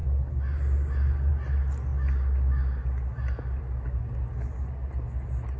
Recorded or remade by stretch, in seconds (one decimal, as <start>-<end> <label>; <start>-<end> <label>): 0.0-5.6 recorded